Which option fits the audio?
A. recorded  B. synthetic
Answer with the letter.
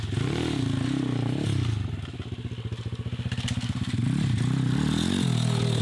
A